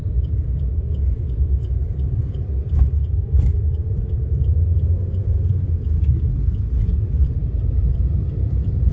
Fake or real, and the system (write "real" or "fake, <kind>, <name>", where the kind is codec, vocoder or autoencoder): fake, vocoder, BigVGAN v2